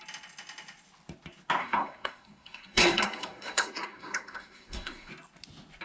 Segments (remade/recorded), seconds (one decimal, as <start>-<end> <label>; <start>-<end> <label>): 0.0-1.6 recorded; 1.6-5.1 remade; 5.1-5.8 recorded